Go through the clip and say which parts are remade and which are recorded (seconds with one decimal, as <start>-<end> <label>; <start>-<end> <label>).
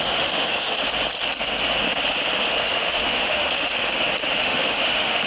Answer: 0.0-0.9 remade; 0.9-2.6 recorded; 2.6-3.8 remade; 3.8-4.4 recorded; 4.4-5.3 remade